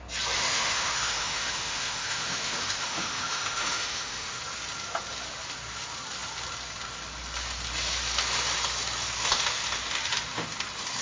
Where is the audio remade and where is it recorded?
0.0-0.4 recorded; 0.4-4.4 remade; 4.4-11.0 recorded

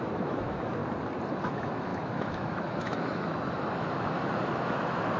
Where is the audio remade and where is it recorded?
0.0-0.8 remade; 0.8-1.4 recorded; 1.4-5.2 remade

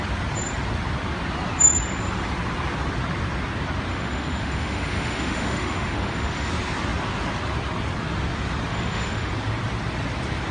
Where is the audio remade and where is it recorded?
0.0-3.9 recorded; 3.9-6.5 remade; 6.5-8.7 recorded; 8.7-9.3 remade; 9.3-10.5 recorded

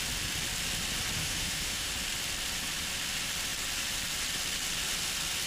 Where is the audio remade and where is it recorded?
0.0-1.2 recorded; 1.2-1.9 remade; 1.9-5.5 recorded

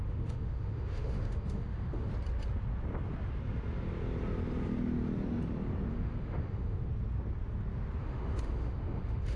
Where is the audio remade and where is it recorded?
0.0-2.1 remade; 2.1-5.9 recorded; 5.9-6.9 remade; 6.9-8.0 recorded; 8.0-9.4 remade

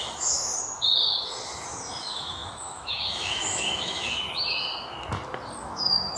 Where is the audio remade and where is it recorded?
0.0-0.5 remade; 0.5-2.0 recorded; 2.0-4.7 remade; 4.7-5.6 recorded; 5.6-6.2 remade